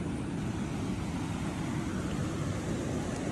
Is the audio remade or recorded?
recorded